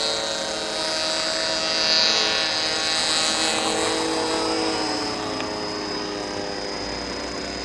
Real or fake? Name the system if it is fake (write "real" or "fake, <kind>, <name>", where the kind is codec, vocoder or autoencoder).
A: real